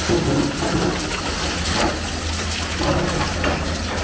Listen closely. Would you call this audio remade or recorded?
recorded